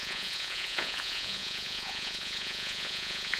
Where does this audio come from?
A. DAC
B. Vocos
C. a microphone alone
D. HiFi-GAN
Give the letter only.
B